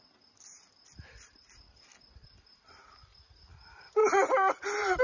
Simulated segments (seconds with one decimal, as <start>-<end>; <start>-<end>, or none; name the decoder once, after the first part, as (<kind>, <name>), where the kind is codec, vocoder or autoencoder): 4.0-5.0 (vocoder, BigVGAN v2)